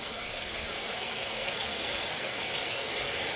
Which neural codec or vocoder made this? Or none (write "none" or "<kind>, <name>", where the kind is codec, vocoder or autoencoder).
codec, SNAC